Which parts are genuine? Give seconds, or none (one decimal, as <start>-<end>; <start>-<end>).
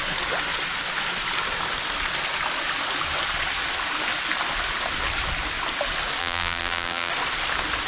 0.0-6.2; 7.1-7.9